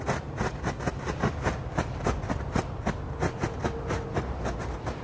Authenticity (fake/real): real